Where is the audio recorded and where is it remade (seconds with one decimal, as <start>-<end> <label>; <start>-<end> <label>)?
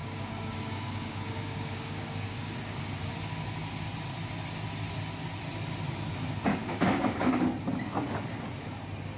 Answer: 0.0-2.8 remade; 2.8-6.5 recorded; 6.5-7.3 remade; 7.3-9.2 recorded